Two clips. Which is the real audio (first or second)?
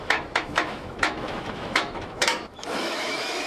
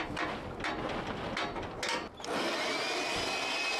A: second